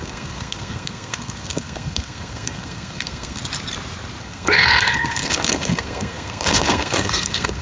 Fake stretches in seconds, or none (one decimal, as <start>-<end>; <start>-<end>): 0.0-3.4; 4.2-7.6